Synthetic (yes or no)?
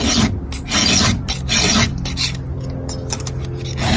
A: no